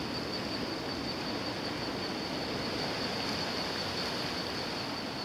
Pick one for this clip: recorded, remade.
recorded